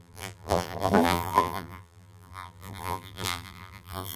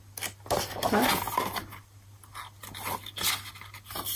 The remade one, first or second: first